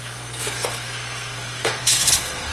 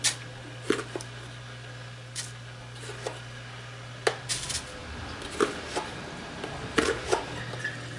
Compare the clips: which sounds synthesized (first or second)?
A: first